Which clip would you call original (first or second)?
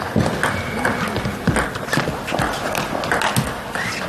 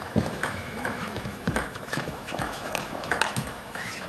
first